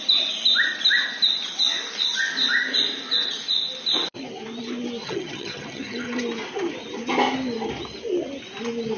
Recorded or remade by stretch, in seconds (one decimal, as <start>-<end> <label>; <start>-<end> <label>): 0.0-5.0 recorded; 5.0-6.2 remade; 6.2-9.0 recorded